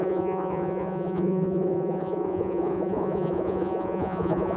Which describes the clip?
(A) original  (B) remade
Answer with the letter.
B